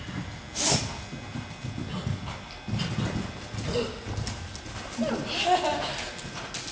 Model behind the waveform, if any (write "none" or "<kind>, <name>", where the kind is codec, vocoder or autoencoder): none